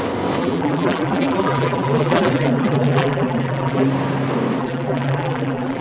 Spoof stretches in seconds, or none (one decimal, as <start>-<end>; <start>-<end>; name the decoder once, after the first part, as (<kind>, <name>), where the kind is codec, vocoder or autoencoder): 0.4-3.9 (vocoder, BigVGAN v2); 4.6-5.8